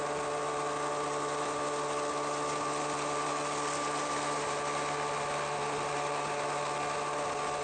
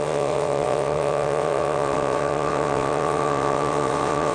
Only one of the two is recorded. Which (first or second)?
first